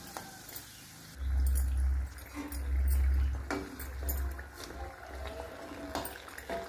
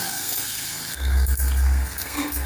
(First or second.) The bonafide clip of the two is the first